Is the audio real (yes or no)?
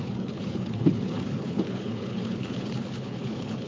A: no